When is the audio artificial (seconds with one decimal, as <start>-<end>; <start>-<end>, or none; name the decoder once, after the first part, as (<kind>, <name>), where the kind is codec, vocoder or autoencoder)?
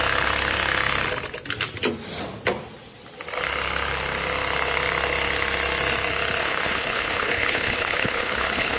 6.4-8.8 (codec, HILCodec)